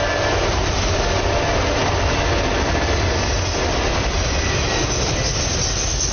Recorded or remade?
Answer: recorded